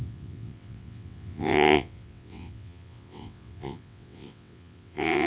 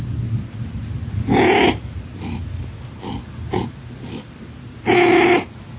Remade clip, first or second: first